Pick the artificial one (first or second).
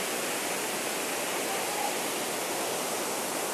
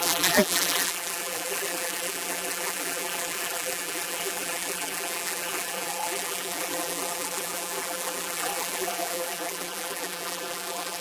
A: second